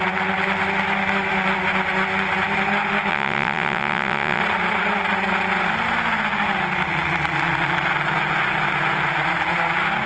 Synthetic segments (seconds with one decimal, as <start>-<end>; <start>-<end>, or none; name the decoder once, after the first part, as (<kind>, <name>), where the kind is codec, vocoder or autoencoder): 3.1-4.4 (vocoder, WaveNeXt)